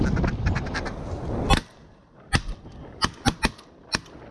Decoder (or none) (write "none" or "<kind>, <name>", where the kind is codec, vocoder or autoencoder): none